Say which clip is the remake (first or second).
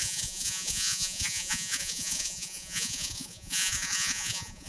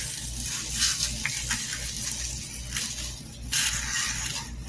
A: first